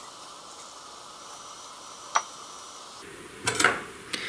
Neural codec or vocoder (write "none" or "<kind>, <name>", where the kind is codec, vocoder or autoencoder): none